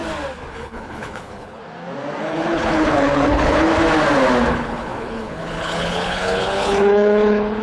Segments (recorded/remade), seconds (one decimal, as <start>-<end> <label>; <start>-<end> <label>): 0.0-0.5 recorded; 0.5-1.6 remade; 1.6-2.2 recorded; 2.2-3.7 remade; 3.7-4.5 recorded; 4.5-7.6 remade